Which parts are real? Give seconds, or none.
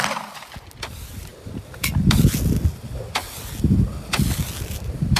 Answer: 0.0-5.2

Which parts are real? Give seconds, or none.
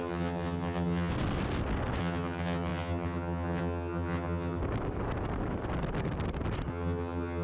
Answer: 1.1-2.0; 4.6-6.7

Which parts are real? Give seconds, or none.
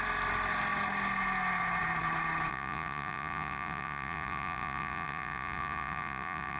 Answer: 0.0-2.5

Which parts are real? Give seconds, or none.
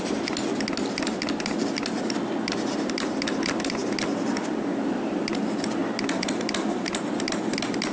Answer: 0.0-7.9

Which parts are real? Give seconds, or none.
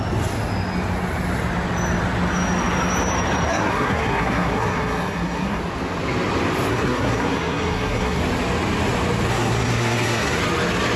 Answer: 0.0-3.5; 5.6-6.7; 8.2-9.3; 10.4-11.0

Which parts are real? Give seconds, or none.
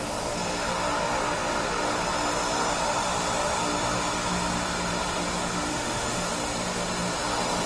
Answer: 0.0-5.7; 6.2-7.7